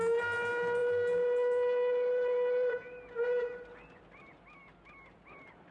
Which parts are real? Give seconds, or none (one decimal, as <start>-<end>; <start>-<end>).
0.0-5.7